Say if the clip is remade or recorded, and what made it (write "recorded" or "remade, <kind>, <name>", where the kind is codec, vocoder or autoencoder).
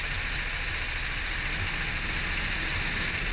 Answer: recorded